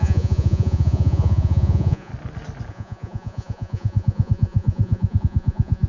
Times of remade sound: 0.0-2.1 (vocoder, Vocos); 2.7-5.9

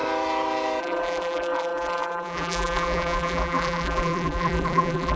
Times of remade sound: 0.8-5.2 (vocoder, BigVGAN v2)

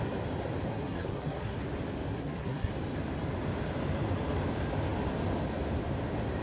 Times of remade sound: 0.7-1.6 (codec, SNAC); 2.1-2.7

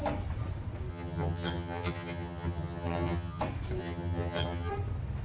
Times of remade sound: 0.9-3.4 (vocoder, HiFi-GAN); 3.8-4.7